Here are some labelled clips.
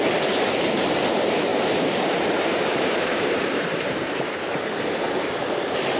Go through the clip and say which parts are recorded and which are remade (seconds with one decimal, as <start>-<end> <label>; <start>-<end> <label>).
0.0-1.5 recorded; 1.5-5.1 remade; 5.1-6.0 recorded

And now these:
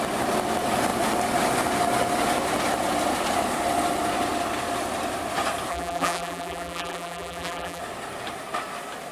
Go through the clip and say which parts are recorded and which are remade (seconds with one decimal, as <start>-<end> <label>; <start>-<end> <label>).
0.0-5.7 recorded; 5.7-7.8 remade; 7.8-9.1 recorded

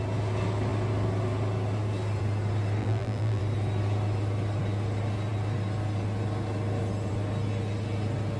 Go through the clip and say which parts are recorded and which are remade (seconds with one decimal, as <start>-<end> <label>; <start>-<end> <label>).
0.0-2.8 recorded; 2.8-3.4 remade; 3.4-8.4 recorded

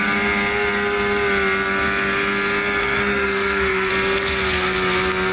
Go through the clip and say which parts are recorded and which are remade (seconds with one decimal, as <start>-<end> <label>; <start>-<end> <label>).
0.0-2.8 recorded; 2.8-3.9 remade; 3.9-5.3 recorded

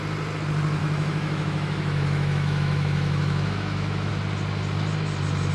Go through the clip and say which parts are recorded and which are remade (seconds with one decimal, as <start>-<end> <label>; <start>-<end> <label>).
0.0-0.8 recorded; 0.8-4.1 remade; 4.1-5.5 recorded

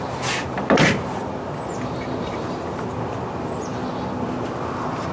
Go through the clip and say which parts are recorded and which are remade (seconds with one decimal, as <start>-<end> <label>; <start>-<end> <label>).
0.0-5.1 recorded

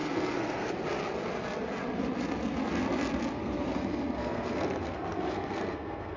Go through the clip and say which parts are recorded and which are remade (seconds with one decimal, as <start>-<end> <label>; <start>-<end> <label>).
0.0-0.7 remade; 0.7-3.3 recorded; 3.3-6.2 remade

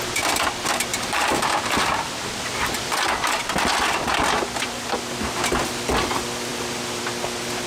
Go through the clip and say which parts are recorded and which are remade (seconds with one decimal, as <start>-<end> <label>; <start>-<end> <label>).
0.0-0.9 recorded; 0.9-3.0 remade; 3.0-7.7 recorded